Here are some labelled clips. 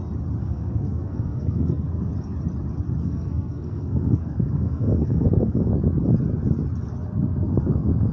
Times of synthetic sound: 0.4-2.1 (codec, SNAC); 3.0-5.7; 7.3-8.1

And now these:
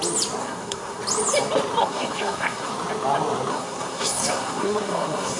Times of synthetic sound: 0.4-1.0 (codec, SNAC); 1.8-2.7; 3.5-5.4

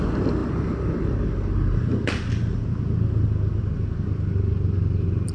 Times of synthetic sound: none

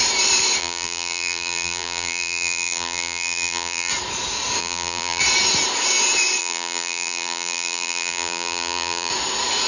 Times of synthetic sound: 0.6-3.9 (vocoder, BigVGAN v2); 4.6-5.2; 6.4-9.1

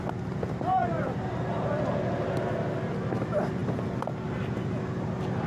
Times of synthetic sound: none

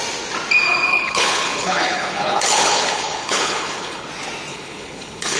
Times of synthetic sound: 0.9-4.1 (codec, HILCodec); 4.5-5.4

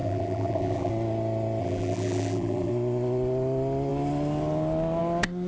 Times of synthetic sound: 0.0-0.9 (vocoder, BigVGAN v2); 1.6-2.7